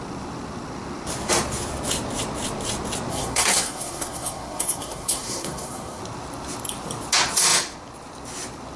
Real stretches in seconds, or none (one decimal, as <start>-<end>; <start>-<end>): 0.0-3.1; 6.0-8.8